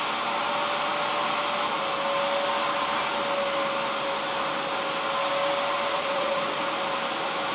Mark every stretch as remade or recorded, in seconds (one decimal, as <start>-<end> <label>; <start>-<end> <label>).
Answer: 0.0-5.9 recorded; 5.9-6.6 remade; 6.6-7.5 recorded